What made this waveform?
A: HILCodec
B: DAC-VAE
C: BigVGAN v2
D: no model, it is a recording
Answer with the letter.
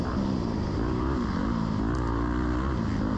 D